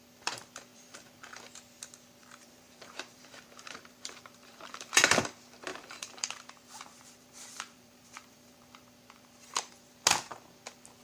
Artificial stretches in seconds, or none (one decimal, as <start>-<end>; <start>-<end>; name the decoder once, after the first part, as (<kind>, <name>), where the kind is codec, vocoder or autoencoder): 0.7-1.3 (vocoder, BigVGAN v2); 2.2-4.9; 5.7-9.9